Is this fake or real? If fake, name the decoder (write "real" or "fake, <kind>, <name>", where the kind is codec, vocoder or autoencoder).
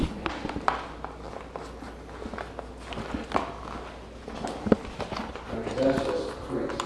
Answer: real